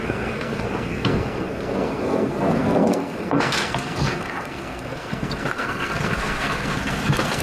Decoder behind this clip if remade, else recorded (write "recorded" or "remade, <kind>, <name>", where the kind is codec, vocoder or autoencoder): remade, codec, SNAC